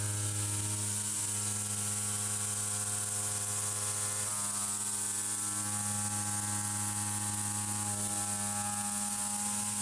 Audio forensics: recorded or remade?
recorded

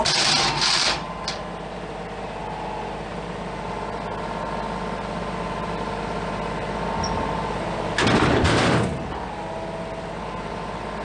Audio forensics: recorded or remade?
recorded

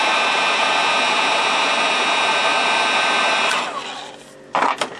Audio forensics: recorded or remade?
recorded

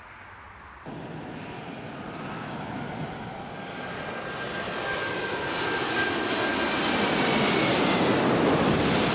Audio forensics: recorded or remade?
recorded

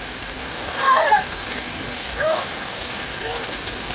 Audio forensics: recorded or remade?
remade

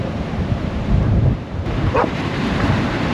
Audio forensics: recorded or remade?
remade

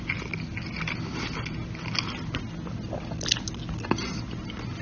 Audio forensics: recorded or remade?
recorded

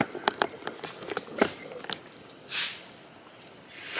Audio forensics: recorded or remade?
recorded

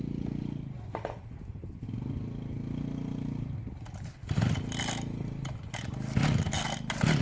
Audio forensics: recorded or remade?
recorded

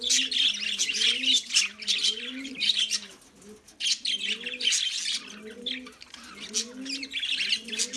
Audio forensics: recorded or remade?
recorded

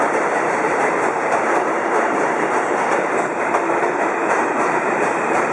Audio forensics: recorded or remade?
remade